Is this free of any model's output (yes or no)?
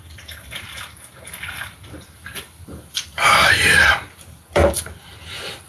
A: no